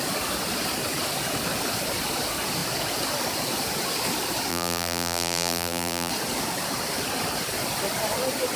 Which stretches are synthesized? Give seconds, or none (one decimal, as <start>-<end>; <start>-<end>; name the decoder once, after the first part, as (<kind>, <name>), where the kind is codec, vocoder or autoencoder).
4.5-6.1 (vocoder, BigVGAN v2)